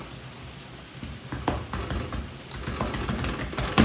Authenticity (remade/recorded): recorded